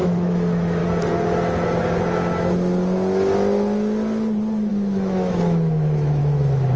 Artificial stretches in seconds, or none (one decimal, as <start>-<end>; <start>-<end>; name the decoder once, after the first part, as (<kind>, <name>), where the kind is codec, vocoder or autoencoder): 0.0-0.8 (autoencoder, DAC-VAE); 4.7-6.8